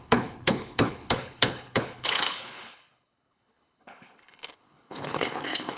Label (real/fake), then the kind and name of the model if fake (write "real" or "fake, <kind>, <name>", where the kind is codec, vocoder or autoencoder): fake, codec, HILCodec